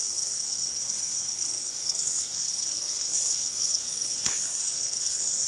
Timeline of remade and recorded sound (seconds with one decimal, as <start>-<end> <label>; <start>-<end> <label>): 0.0-5.5 remade

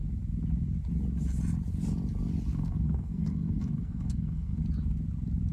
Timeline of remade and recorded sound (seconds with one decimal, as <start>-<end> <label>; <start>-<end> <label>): 0.0-2.5 recorded; 2.5-4.6 remade; 4.6-5.5 recorded

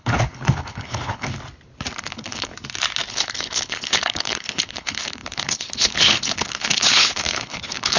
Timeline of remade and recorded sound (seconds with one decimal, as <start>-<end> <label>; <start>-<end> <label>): 0.0-1.4 remade; 1.4-2.0 recorded; 2.0-2.5 remade; 2.5-3.1 recorded; 3.1-8.0 remade

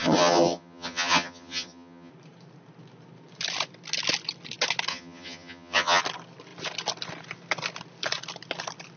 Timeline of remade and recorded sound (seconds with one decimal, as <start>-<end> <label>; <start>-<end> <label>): 0.0-2.1 remade; 2.1-4.9 recorded; 4.9-6.0 remade; 6.0-9.0 recorded

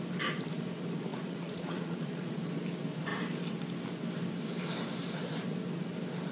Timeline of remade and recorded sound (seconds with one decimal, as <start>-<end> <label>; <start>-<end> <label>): 0.0-1.1 recorded; 1.1-2.5 remade; 2.5-6.3 recorded

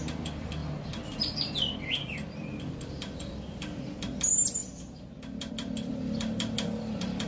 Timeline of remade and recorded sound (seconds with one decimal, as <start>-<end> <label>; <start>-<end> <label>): 0.0-7.3 remade